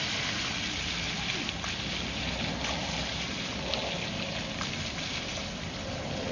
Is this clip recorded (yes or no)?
yes